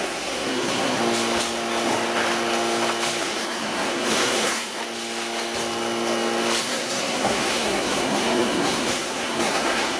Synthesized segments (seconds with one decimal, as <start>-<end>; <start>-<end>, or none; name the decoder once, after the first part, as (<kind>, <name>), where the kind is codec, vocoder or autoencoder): 0.0-1.0 (codec, SNAC); 3.2-4.8; 6.6-10.0